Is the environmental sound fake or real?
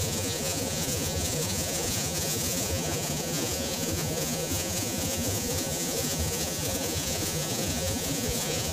fake